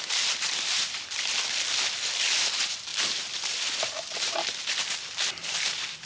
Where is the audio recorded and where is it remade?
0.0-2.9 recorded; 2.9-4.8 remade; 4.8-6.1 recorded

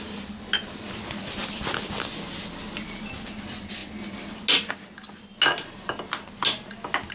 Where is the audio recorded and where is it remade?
0.0-7.1 recorded

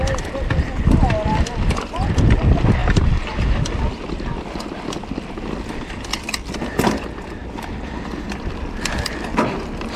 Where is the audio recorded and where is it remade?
0.0-10.0 recorded

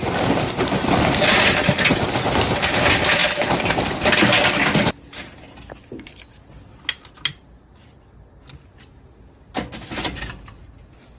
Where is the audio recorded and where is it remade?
0.0-11.2 recorded

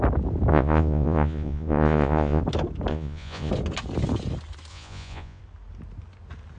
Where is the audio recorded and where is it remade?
0.0-0.5 recorded; 0.5-2.4 remade; 2.4-2.9 recorded; 2.9-3.5 remade; 3.5-4.7 recorded; 4.7-5.4 remade; 5.4-6.6 recorded